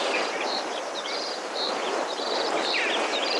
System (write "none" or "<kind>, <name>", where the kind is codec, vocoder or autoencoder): vocoder, BigVGAN v2